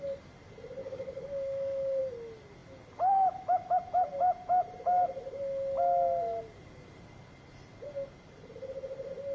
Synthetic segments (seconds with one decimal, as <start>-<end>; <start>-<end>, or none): 0.8-2.0